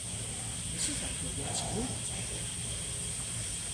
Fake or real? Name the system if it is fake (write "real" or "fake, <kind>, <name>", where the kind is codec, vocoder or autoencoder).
real